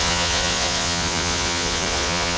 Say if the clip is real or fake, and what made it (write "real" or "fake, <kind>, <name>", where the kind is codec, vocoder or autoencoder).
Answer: fake, vocoder, Vocos